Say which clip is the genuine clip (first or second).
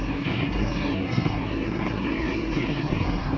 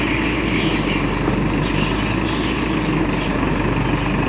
second